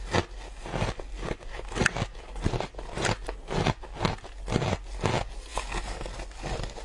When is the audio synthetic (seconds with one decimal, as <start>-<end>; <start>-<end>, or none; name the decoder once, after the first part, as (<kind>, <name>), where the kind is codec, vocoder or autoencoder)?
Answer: none